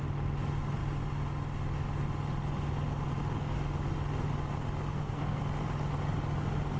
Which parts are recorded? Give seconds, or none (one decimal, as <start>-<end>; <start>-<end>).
0.0-4.9; 5.4-6.8